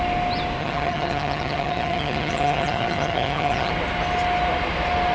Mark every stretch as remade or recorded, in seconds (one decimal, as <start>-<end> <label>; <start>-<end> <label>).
0.0-0.6 recorded; 0.6-3.7 remade; 3.7-5.1 recorded